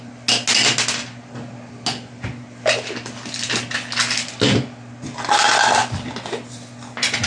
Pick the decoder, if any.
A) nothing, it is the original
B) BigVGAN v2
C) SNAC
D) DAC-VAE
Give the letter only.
A